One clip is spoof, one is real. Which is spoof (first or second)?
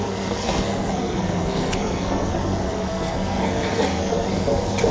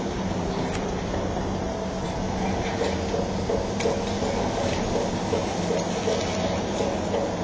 first